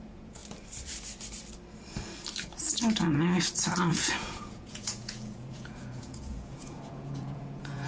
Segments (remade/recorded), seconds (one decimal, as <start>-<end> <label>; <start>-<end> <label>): 0.0-0.4 remade; 0.4-3.9 recorded; 3.9-7.9 remade